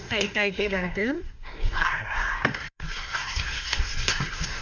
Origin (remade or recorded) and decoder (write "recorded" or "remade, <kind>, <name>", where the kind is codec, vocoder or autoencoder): remade, codec, SNAC